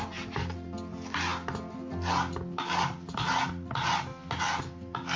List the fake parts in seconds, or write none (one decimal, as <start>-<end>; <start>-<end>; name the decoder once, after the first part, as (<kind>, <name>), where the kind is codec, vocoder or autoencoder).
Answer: none